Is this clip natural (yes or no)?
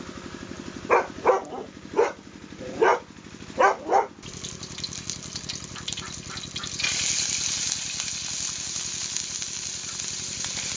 yes